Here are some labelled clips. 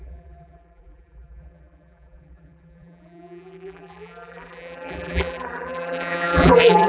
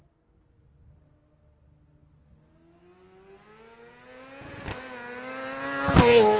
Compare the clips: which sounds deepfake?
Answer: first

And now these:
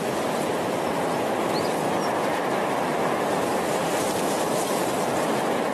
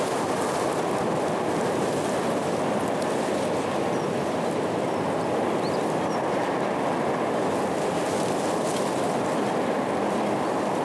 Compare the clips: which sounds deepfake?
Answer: first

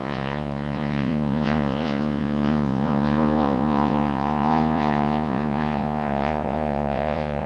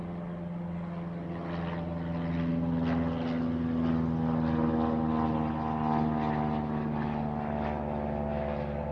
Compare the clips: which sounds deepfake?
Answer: first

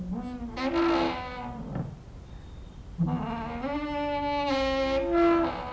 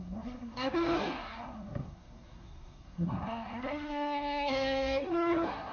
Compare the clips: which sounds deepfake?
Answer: second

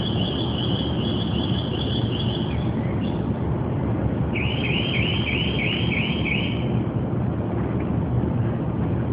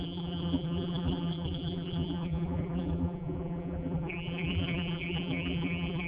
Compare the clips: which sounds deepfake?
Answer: second